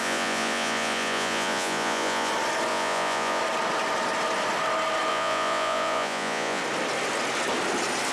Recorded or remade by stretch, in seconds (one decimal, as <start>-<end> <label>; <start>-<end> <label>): 0.0-2.3 remade; 2.3-2.7 recorded; 2.7-3.4 remade; 3.4-5.1 recorded; 5.1-6.6 remade; 6.6-8.1 recorded